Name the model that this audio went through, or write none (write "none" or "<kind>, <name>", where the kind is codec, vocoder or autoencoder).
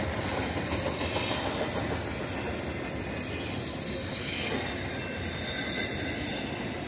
none